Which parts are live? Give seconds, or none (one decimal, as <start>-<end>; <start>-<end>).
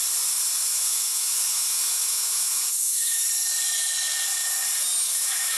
0.0-0.7; 3.2-5.0